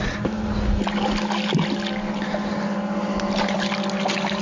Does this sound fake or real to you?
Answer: real